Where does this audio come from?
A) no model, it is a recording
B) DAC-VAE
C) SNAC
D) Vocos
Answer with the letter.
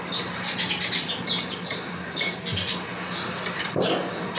A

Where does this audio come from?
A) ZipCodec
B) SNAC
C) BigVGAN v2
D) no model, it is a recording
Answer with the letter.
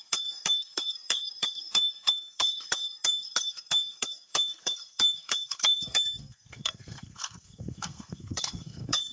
B